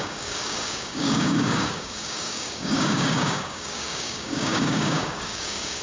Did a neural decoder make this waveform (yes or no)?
yes